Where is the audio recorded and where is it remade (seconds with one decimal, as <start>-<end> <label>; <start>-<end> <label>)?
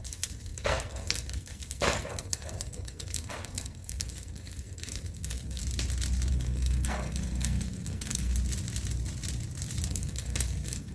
0.0-5.6 remade; 5.6-6.3 recorded; 6.3-8.3 remade; 8.3-9.9 recorded; 9.9-10.9 remade